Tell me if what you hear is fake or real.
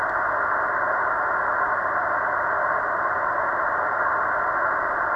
real